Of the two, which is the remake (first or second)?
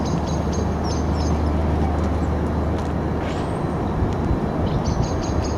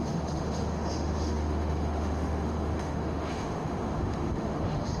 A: second